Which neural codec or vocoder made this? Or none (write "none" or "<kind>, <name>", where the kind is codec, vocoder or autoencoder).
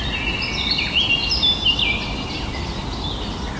none